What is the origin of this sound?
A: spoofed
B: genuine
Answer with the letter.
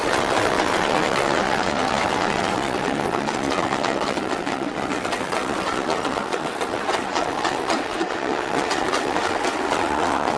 A